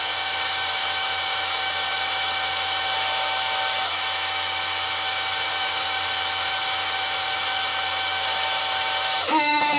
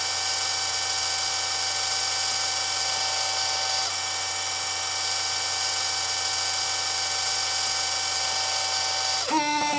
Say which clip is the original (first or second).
second